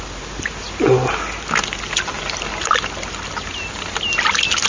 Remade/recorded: recorded